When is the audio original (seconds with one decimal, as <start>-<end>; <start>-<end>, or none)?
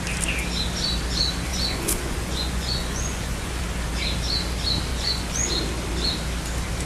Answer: 0.0-1.5; 3.6-4.9; 5.5-6.9